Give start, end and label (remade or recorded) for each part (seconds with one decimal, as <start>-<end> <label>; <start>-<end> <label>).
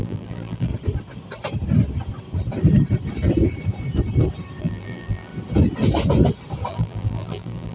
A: 0.0-0.7 remade; 0.7-4.6 recorded; 4.6-5.3 remade; 5.3-6.7 recorded; 6.7-7.7 remade